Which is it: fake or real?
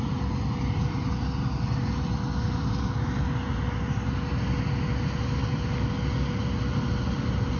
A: real